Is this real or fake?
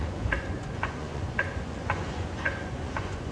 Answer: fake